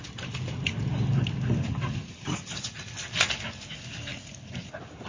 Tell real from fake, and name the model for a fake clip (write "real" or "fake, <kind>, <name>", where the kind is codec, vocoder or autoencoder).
real